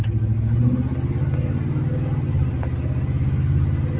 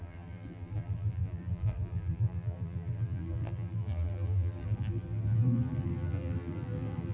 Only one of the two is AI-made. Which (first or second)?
second